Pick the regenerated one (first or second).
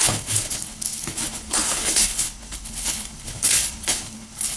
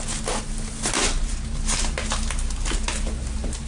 first